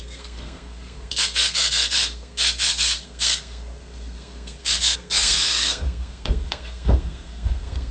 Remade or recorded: remade